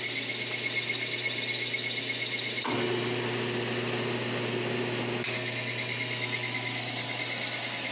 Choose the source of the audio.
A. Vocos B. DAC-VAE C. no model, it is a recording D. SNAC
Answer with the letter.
C